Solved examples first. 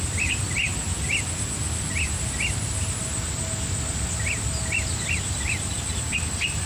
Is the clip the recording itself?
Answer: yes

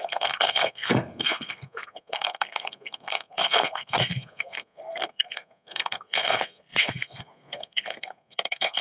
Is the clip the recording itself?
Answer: no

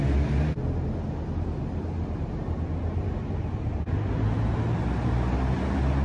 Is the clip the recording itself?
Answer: yes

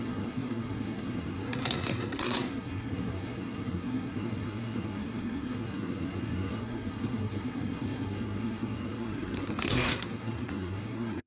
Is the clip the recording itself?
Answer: no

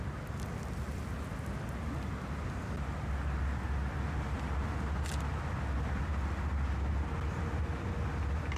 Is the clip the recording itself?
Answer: yes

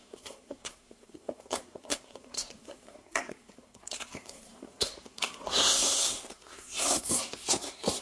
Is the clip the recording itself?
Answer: no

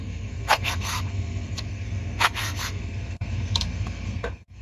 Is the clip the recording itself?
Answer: no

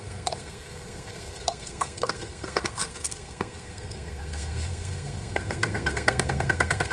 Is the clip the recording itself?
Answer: no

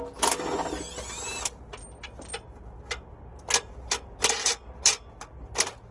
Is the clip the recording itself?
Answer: yes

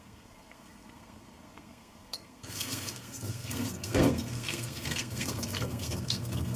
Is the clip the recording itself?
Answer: no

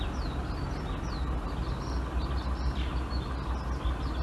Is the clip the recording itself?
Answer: yes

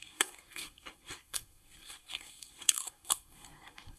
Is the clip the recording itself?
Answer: no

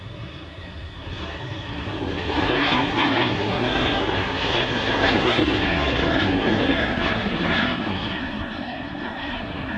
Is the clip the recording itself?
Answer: no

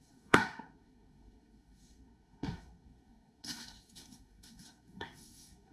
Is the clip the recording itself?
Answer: no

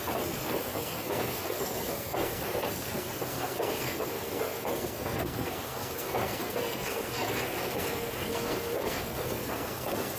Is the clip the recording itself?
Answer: no